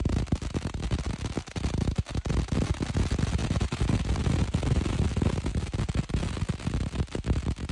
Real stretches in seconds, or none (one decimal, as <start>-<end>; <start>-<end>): 0.0-7.7